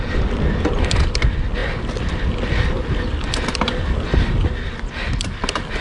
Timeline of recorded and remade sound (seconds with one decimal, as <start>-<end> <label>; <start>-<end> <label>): 0.0-5.8 recorded